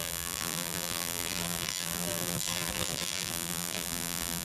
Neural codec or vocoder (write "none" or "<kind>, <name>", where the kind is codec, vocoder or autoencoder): vocoder, BigVGAN v2